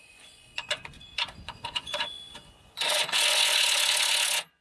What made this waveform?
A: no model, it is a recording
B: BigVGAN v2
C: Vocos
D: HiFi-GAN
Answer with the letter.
C